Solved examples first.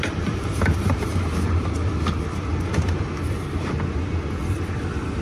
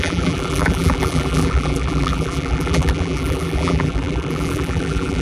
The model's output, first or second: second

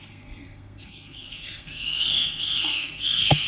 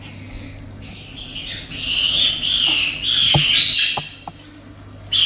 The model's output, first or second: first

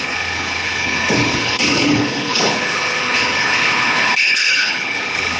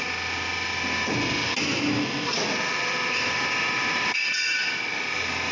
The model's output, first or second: first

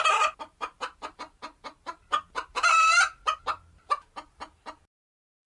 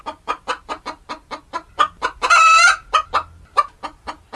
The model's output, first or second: first